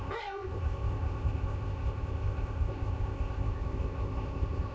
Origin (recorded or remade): remade